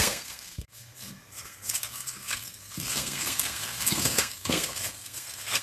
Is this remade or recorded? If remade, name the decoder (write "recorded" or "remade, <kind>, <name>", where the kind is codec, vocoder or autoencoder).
remade, codec, SNAC